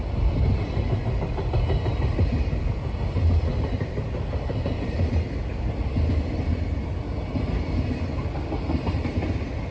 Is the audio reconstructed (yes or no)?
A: no